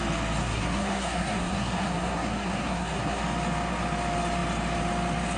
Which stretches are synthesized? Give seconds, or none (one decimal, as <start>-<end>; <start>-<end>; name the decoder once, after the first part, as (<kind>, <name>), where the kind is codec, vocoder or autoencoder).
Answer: 0.4-3.2 (codec, SNAC)